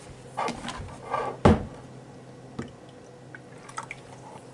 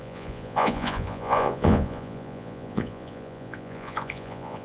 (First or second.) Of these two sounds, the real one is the first